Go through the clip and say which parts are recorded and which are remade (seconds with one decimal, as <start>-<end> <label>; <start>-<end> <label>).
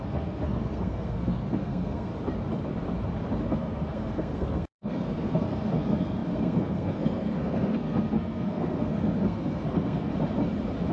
0.0-2.1 remade; 2.1-3.5 recorded; 3.5-10.1 remade; 10.1-10.9 recorded